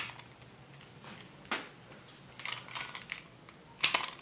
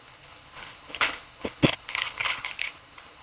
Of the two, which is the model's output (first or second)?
second